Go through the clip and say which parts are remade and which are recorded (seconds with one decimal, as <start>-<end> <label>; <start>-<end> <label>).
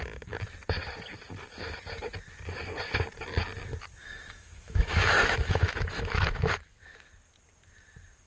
0.0-4.0 recorded; 4.0-7.1 remade; 7.1-8.3 recorded